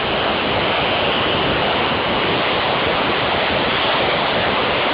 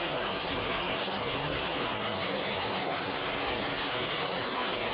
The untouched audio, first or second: first